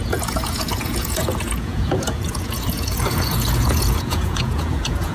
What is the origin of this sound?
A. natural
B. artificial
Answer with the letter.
B